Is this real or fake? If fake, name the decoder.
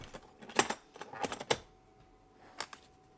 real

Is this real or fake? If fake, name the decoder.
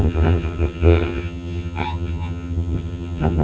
fake, vocoder, HiFi-GAN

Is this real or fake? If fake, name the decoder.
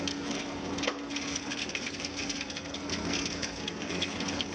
fake, codec, SNAC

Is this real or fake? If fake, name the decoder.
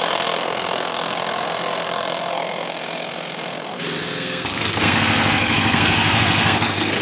fake, codec, SNAC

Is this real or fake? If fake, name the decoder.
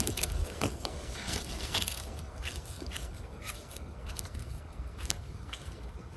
fake, codec, SNAC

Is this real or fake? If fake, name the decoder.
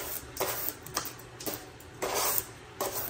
real